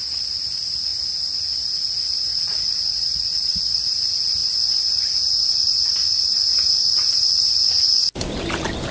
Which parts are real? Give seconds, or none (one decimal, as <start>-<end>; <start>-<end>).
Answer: 0.0-2.3; 3.9-8.9